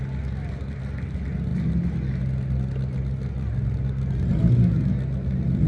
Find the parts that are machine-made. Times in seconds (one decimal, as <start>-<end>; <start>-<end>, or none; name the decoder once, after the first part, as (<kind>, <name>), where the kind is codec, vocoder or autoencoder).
none